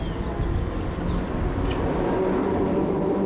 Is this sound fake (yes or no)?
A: no